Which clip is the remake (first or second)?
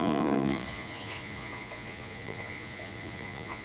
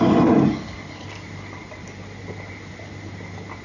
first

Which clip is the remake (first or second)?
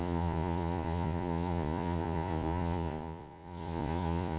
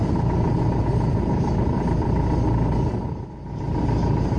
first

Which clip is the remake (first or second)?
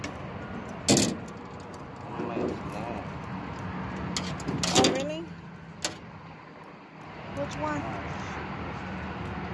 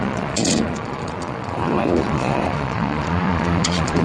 second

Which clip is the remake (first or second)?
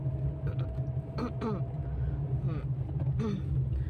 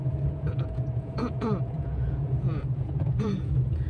second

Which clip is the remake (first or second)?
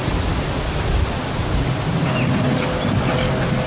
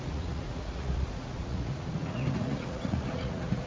second